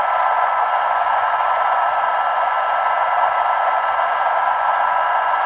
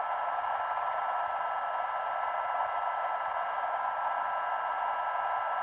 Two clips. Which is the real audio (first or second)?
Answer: second